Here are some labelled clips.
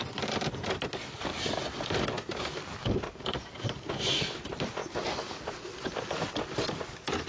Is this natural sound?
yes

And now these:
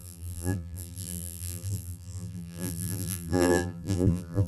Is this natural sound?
no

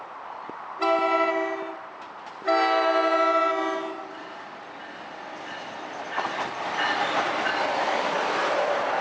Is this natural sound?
yes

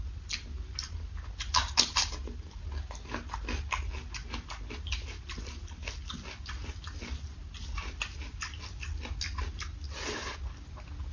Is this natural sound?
yes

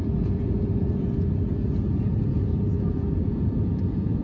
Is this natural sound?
no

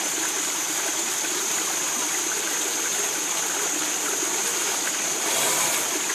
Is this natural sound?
yes